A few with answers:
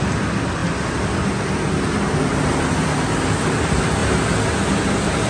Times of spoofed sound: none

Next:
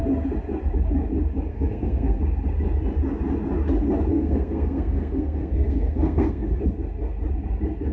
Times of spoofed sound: 1.5-2.2 (codec, SNAC); 4.1-6.6